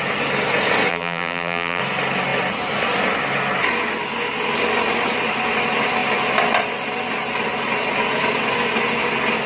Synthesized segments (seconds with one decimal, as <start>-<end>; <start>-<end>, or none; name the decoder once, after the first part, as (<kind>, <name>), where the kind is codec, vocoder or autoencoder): 0.9-1.8 (vocoder, BigVGAN v2)